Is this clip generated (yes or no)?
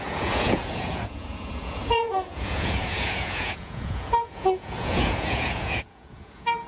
yes